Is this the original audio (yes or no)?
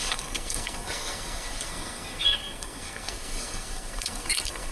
no